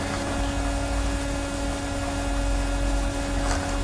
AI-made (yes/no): no